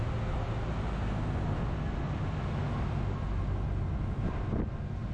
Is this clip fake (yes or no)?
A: no